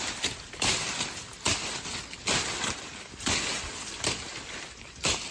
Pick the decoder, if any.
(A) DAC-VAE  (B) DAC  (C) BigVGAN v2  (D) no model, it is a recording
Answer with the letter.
D